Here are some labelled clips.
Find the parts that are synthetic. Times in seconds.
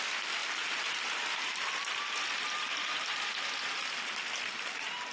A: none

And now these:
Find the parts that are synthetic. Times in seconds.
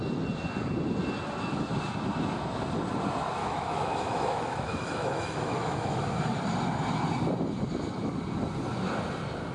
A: 3.4-6.0 (autoencoder, DAC-VAE)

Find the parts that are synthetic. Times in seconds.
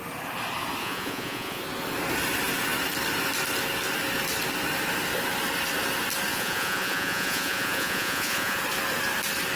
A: 0.8-1.6 (vocoder, Vocos); 6.3-8.6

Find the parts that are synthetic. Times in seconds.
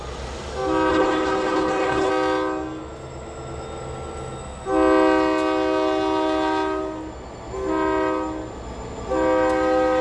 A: 0.9-2.1 (codec, HILCodec)